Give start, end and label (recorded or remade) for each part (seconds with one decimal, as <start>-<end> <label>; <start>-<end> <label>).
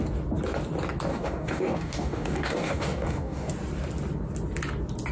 0.0-1.1 recorded; 1.1-3.5 remade; 3.5-5.1 recorded